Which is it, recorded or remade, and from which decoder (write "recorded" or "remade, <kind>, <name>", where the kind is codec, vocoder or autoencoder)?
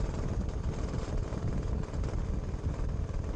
remade, vocoder, BigVGAN v2